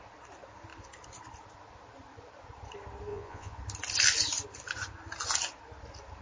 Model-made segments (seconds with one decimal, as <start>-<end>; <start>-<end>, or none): 3.1-3.6